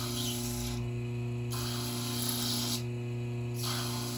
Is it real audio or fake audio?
real